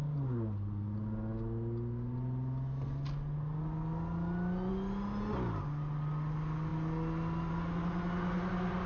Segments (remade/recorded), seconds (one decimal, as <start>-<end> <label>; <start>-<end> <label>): 0.0-8.9 recorded